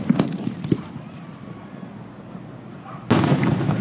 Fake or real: real